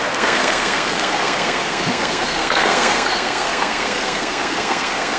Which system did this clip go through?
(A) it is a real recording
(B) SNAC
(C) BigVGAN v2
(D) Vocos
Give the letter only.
B